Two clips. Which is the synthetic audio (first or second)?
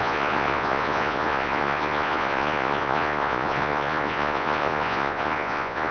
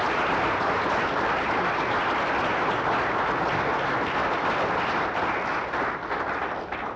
first